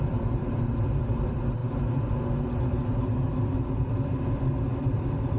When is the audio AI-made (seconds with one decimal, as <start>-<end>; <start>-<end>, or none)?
0.0-1.6; 3.3-5.4